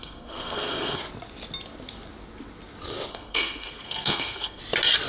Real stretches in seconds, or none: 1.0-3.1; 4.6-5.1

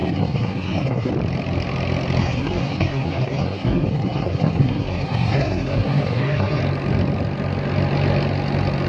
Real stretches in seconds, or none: 1.1-2.2; 6.6-8.9

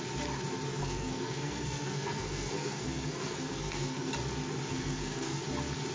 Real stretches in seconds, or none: 0.0-0.7; 4.1-4.7; 5.4-5.9

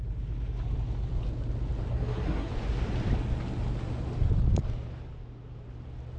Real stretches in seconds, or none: 0.0-1.9; 2.5-6.2

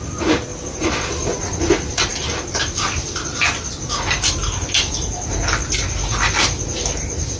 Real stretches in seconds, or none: 0.0-7.4

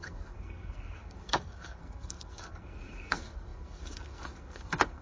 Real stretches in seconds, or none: none